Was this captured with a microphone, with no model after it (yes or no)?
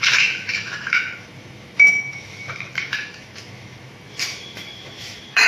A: no